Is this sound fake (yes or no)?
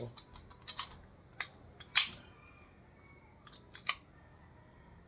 no